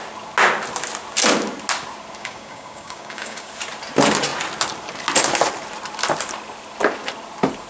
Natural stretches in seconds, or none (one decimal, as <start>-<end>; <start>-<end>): 0.0-2.2; 3.5-7.7